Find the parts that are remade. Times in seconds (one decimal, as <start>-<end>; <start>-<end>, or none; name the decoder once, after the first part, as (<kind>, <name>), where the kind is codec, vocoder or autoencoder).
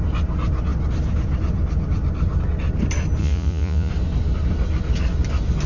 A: 3.2-3.9 (vocoder, Vocos)